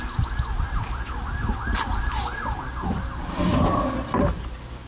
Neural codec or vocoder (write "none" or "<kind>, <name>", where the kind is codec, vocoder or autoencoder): none